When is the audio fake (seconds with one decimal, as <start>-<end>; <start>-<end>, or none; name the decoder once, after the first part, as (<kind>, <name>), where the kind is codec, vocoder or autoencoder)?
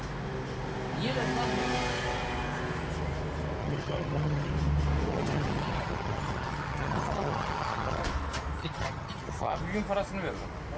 3.6-4.5 (vocoder, HiFi-GAN); 5.1-8.0; 8.6-9.6